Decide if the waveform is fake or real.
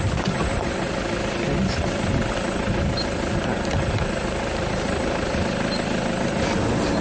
fake